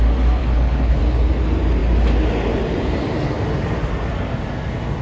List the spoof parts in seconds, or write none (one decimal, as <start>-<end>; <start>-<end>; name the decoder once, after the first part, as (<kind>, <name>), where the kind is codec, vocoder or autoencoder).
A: 0.4-1.0 (codec, HILCodec)